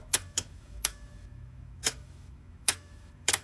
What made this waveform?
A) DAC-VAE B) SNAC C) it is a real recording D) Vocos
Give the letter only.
A